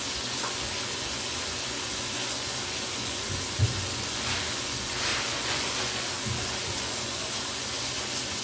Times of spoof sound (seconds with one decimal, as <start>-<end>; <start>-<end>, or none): 0.0-8.4